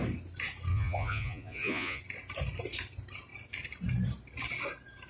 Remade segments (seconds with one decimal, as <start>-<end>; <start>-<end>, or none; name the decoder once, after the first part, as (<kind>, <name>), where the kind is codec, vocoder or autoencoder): 0.7-2.0 (vocoder, Vocos)